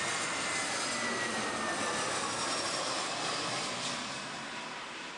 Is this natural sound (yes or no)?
yes